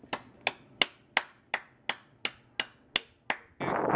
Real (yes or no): yes